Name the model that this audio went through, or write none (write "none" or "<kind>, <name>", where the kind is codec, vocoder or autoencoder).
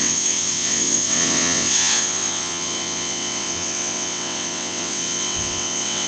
vocoder, WaveNeXt